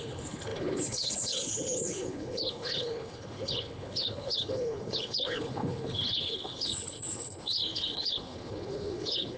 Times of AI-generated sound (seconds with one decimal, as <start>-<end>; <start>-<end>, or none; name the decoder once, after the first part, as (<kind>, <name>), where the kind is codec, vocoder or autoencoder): 0.0-9.4 (codec, HILCodec)